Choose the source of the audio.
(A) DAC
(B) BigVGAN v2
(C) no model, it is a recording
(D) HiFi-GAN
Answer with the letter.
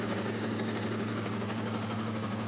A